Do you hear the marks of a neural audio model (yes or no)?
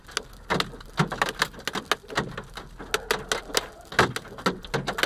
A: no